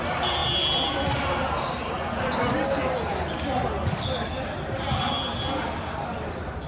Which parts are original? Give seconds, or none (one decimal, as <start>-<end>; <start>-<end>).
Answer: 0.0-6.7